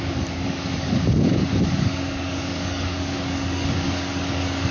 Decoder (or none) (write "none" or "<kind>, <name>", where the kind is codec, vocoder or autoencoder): codec, DAC